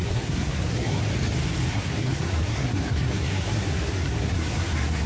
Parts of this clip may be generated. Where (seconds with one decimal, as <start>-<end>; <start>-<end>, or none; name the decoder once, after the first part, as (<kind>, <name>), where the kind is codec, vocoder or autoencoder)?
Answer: 0.0-1.0 (codec, SNAC); 1.7-5.1